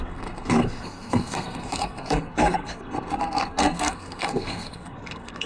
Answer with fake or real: fake